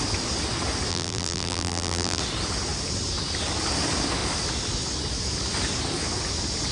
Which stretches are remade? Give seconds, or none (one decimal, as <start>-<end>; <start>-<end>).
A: 0.9-2.2